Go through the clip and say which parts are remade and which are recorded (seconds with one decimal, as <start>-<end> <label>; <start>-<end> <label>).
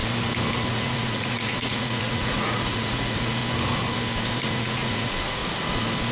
0.0-0.7 recorded; 0.7-3.4 remade; 3.4-4.4 recorded; 4.4-5.4 remade; 5.4-6.1 recorded